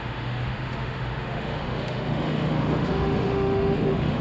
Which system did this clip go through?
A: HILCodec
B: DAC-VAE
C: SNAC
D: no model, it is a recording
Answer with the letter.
B